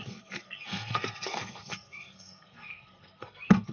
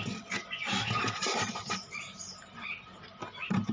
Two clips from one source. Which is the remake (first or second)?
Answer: first